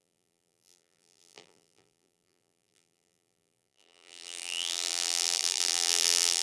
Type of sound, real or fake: fake